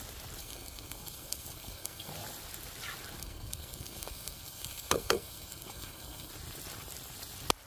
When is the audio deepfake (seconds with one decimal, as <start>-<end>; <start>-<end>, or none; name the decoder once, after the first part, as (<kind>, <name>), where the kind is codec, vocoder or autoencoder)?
0.4-2.1 (codec, SNAC); 3.2-6.3